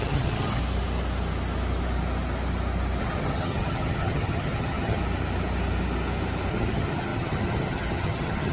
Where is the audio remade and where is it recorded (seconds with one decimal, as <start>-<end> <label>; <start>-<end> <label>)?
0.0-0.6 remade; 0.6-3.0 recorded; 3.0-5.0 remade; 5.0-6.5 recorded; 6.5-8.5 remade